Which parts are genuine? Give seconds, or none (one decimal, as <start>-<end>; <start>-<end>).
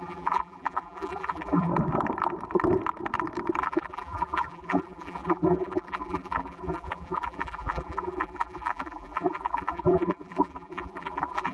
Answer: 1.7-3.6